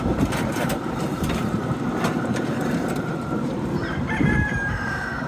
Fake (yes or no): yes